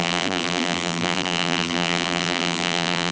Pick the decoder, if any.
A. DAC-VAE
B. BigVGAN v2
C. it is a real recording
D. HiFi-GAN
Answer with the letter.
B